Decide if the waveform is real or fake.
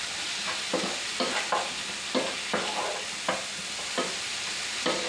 real